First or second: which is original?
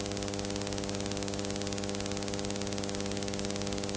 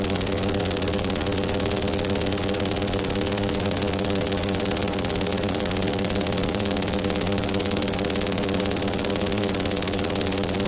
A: first